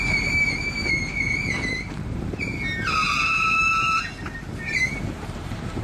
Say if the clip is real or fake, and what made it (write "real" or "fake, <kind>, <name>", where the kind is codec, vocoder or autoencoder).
fake, vocoder, BigVGAN v2